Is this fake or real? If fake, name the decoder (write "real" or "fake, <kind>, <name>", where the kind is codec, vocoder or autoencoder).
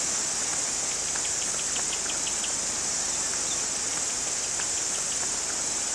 real